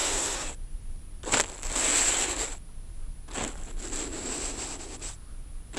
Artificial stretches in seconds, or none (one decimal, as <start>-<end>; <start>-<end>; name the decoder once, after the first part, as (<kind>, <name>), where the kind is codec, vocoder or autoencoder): 0.0-0.5 (codec, SNAC)